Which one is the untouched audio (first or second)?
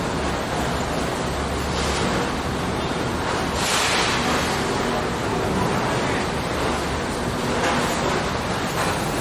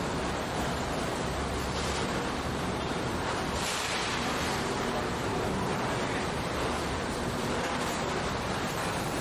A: first